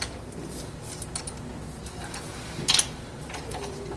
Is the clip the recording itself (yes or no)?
yes